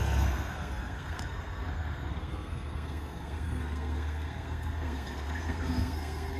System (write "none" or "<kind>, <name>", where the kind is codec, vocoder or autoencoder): codec, SNAC